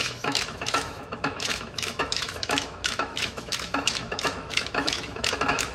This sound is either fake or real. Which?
fake